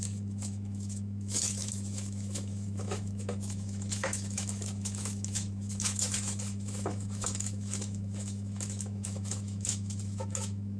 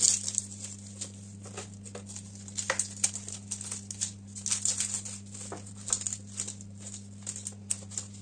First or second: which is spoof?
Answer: first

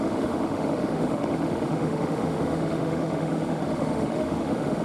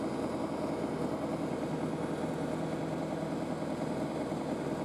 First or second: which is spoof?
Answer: first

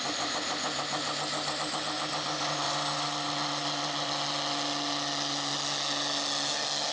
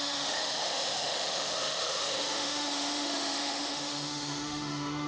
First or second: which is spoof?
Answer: second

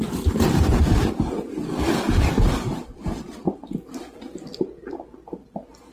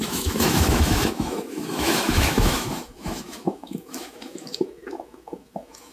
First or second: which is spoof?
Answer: second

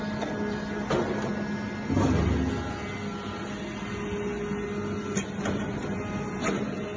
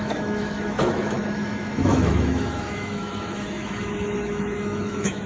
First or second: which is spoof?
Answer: second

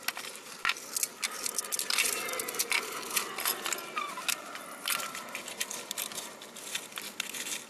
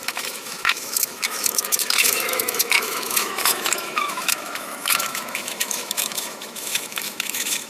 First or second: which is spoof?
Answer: second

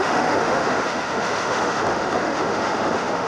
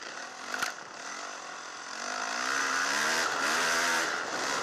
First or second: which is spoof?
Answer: first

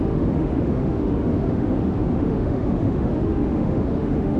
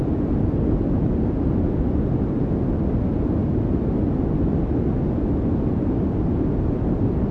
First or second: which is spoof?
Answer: first